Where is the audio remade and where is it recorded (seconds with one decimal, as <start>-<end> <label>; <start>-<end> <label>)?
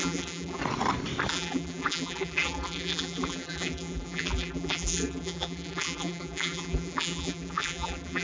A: 0.0-0.6 remade; 0.6-1.3 recorded; 1.3-8.2 remade